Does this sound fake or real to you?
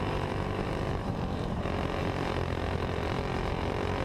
fake